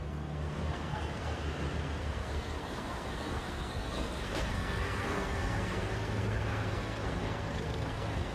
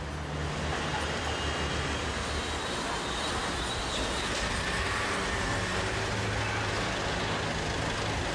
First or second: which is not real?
first